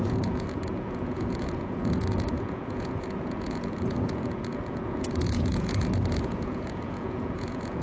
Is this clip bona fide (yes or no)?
no